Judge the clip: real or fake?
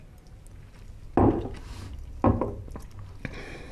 real